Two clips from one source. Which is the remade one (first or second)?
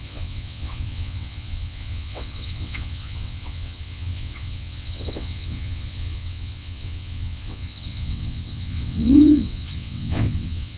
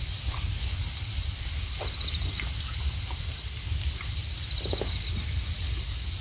first